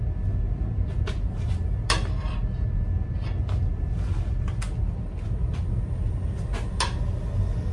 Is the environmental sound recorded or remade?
recorded